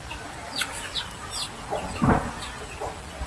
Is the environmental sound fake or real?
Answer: real